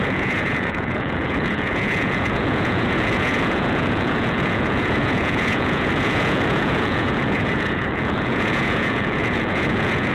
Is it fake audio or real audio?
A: fake